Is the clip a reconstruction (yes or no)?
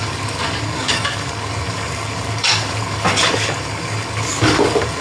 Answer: yes